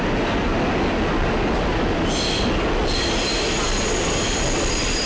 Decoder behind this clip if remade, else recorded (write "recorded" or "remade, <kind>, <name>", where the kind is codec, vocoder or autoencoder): recorded